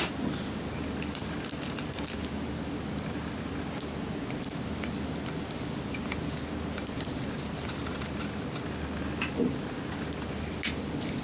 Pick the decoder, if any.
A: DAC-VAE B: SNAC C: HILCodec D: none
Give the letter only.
D